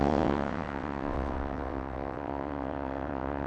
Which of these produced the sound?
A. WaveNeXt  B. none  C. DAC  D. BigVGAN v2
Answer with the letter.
A